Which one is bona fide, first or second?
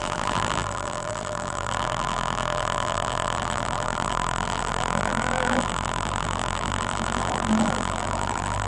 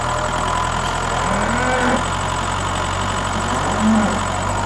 second